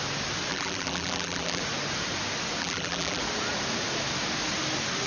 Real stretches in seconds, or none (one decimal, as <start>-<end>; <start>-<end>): 0.0-0.5; 1.6-2.6; 3.2-5.1